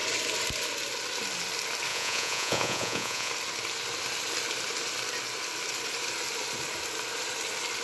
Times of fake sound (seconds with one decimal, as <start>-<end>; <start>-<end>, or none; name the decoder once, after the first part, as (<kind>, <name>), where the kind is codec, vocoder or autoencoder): 1.9-3.3 (vocoder, Vocos)